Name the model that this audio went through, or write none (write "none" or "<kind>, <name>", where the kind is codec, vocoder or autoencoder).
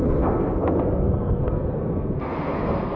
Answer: codec, SNAC